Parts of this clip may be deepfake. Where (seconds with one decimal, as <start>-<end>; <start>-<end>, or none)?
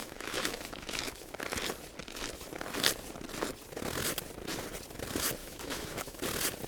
0.0-1.4; 5.4-6.2